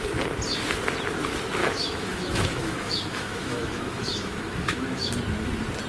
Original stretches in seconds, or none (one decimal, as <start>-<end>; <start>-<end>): 0.0-1.6; 5.1-5.9